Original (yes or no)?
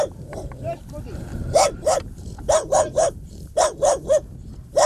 no